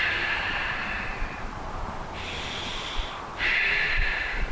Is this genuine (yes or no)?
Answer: no